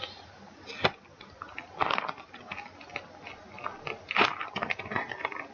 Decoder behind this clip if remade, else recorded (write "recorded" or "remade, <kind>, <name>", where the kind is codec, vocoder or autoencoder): recorded